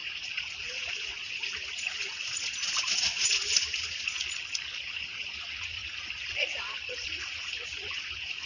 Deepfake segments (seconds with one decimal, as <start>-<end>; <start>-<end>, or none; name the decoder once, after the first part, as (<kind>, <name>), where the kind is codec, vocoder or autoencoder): 0.0-4.2 (vocoder, Vocos); 4.8-8.5